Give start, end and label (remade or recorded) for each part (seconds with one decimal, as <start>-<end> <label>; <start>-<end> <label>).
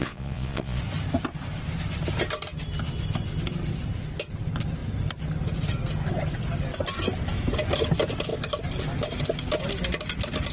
0.0-0.8 remade; 0.8-10.5 recorded